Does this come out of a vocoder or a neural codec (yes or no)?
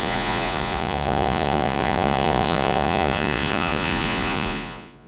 yes